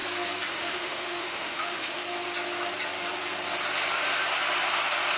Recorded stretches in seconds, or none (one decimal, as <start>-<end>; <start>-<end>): 0.0-0.5; 2.0-5.2